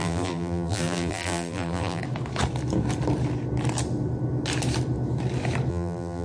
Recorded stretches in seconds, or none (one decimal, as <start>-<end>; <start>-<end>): 2.0-5.7